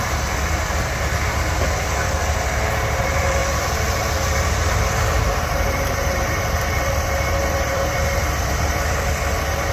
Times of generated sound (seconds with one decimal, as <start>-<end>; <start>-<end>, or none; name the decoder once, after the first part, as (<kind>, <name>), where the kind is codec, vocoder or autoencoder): 0.0-9.7 (vocoder, BigVGAN v2)